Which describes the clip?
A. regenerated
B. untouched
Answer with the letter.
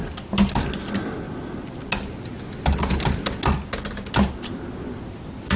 B